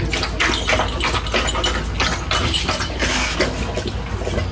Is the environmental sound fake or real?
real